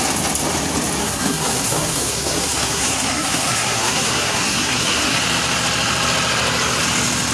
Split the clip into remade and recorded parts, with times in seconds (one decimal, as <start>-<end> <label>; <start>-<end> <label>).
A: 0.0-1.0 recorded; 1.0-5.2 remade; 5.2-7.3 recorded